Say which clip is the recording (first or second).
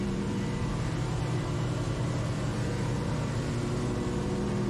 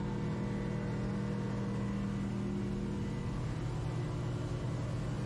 second